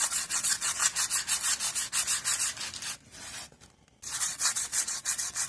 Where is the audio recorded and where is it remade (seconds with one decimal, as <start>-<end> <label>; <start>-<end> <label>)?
0.0-0.8 remade; 0.8-4.1 recorded; 4.1-5.5 remade